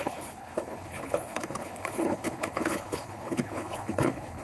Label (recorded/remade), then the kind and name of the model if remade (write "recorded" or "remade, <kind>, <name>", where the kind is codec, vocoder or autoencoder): remade, codec, HILCodec